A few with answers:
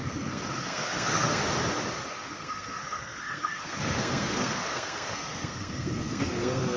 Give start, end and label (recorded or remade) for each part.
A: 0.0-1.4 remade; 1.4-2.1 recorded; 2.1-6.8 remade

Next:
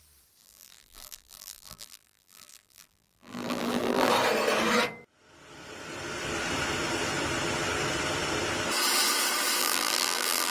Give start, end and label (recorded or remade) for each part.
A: 0.0-0.4 recorded; 0.4-4.1 remade; 4.1-9.6 recorded; 9.6-10.5 remade

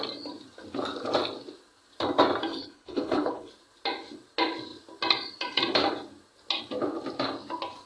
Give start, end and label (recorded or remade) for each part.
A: 0.0-2.5 recorded; 2.5-3.5 remade; 3.5-7.9 recorded

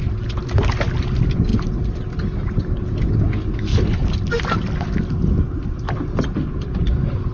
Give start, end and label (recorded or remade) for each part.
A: 0.0-7.3 recorded